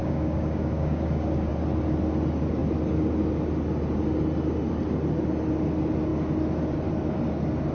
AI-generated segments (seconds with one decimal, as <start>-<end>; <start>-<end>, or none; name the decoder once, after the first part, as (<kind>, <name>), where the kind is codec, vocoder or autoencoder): 0.0-1.5 (codec, DAC)